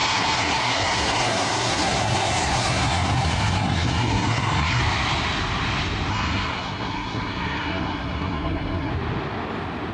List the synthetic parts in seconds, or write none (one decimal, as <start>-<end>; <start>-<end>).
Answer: 0.0-4.8; 6.1-8.9